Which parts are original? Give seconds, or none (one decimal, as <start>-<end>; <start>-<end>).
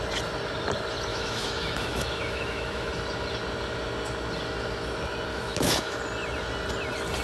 0.0-1.1; 2.9-5.3; 6.0-7.2